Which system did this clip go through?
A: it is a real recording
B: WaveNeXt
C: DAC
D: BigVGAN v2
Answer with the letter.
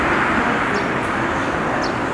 D